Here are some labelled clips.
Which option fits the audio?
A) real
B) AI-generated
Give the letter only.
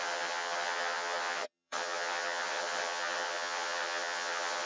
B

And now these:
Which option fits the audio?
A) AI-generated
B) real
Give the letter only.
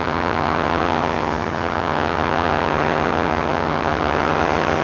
A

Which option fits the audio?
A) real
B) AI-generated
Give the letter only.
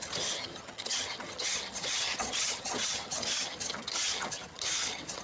B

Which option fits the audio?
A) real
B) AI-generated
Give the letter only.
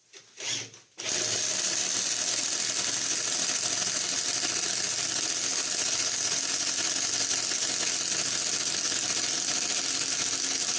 A